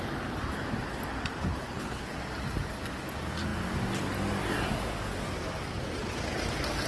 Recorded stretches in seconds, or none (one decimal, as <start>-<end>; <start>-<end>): 0.0-1.5; 2.1-6.9